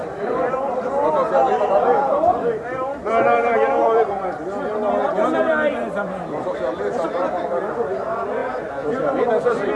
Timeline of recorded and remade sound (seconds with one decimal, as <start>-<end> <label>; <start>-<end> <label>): 0.0-4.6 remade; 4.6-5.0 recorded; 5.0-7.5 remade; 7.5-9.8 recorded